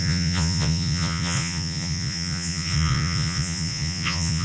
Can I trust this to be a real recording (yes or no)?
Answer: no